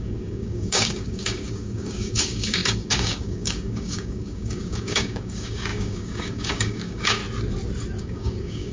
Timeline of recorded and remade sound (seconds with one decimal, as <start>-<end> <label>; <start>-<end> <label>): 0.0-7.2 remade; 7.2-8.0 recorded; 8.0-8.7 remade